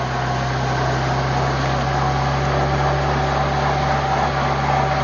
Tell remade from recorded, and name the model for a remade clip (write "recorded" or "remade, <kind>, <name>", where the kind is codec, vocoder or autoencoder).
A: recorded